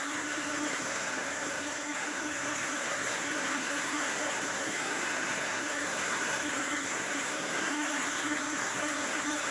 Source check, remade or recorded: remade